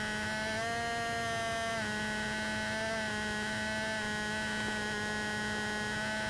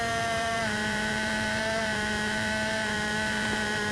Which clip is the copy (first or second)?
second